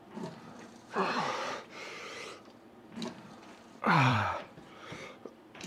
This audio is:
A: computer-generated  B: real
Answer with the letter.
A